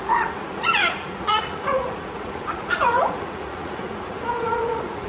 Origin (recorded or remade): remade